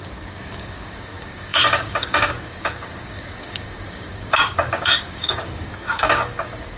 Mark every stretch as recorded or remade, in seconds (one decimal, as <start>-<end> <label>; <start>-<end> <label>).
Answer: 0.0-6.8 remade